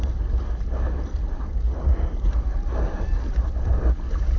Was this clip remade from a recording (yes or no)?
no